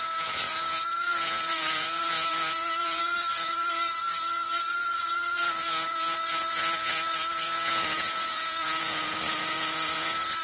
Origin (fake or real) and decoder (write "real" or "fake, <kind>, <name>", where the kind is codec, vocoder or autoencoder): fake, vocoder, Vocos